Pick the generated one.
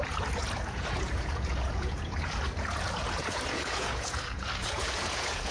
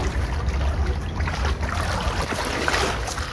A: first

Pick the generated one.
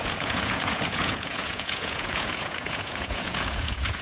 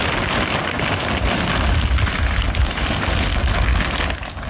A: first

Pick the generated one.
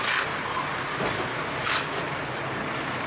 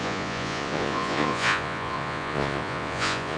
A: second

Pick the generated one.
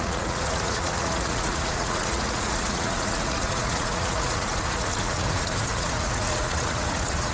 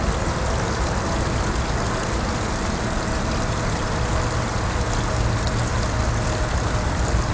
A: first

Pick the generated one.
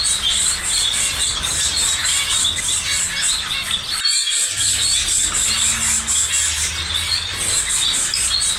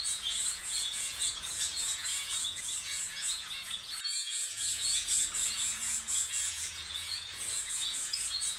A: second